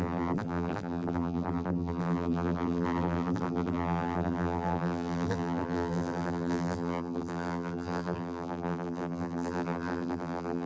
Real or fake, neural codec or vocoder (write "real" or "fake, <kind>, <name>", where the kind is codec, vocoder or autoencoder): fake, vocoder, BigVGAN v2